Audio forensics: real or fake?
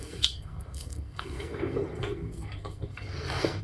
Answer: fake